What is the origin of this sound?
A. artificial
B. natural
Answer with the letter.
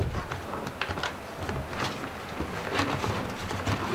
B